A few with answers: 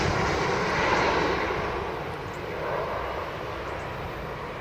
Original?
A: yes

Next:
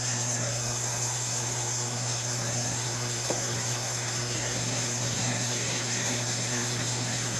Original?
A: no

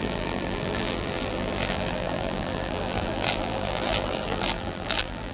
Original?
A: no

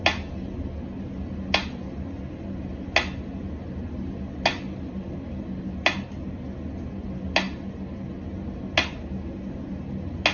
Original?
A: yes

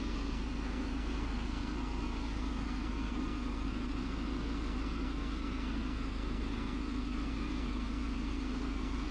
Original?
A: no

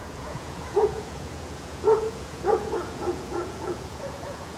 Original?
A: no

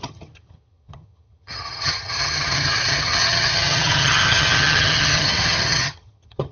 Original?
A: no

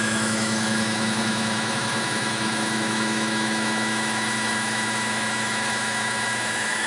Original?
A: no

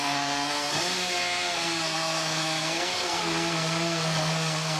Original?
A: no